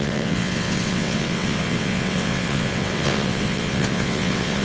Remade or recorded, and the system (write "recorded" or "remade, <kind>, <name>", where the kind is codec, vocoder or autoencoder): remade, vocoder, WaveNeXt